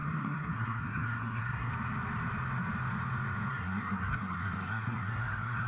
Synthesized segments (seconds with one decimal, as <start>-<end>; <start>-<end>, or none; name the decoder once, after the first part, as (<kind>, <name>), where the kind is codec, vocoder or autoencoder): 0.0-1.7 (codec, SNAC); 3.5-5.7